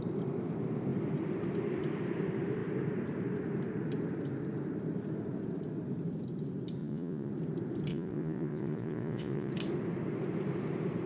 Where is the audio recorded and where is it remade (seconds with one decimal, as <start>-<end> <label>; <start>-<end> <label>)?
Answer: 0.0-6.8 recorded; 6.8-7.3 remade; 7.3-7.9 recorded; 7.9-9.5 remade; 9.5-11.1 recorded